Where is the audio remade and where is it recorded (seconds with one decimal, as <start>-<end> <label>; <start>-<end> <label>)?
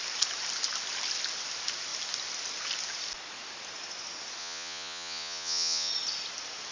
0.0-4.4 recorded; 4.4-5.9 remade; 5.9-6.7 recorded